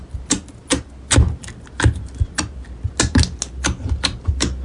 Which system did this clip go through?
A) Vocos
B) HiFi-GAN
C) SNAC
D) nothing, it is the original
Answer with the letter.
D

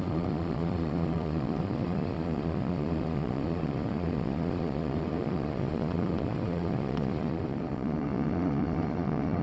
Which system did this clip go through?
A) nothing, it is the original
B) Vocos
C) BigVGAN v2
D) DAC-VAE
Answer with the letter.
B